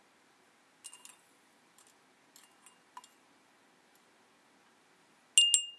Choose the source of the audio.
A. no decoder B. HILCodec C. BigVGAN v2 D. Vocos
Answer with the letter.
A